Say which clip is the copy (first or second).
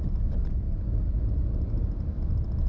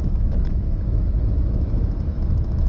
second